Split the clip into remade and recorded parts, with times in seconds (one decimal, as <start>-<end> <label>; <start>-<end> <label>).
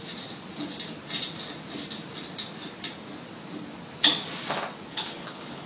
0.0-4.9 recorded; 4.9-5.7 remade